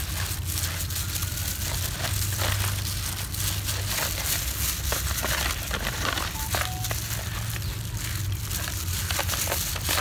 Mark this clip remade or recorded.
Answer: recorded